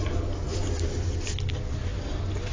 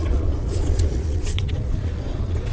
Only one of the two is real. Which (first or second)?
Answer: first